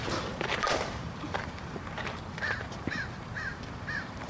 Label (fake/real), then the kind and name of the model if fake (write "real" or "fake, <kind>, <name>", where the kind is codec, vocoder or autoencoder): fake, vocoder, BigVGAN v2